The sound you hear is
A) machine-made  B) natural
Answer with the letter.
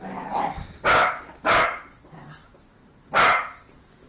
B